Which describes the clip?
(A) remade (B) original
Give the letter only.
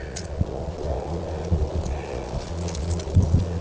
A